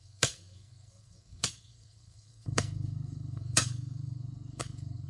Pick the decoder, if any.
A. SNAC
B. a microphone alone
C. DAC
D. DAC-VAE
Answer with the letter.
A